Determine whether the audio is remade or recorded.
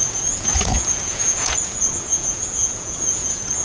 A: remade